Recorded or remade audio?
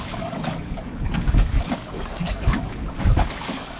remade